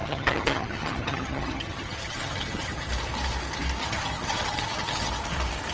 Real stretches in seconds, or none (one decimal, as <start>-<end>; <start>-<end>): 2.9-3.8; 5.1-5.7

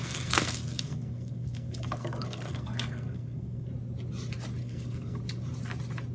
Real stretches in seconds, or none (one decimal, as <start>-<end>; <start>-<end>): 3.7-4.6; 5.2-6.1

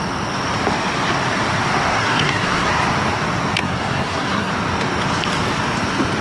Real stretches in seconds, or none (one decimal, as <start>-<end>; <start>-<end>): 0.0-1.9; 2.7-3.6; 4.5-6.2

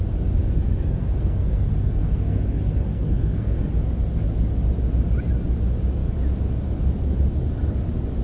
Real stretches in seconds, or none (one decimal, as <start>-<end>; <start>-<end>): 0.0-0.4; 3.7-8.2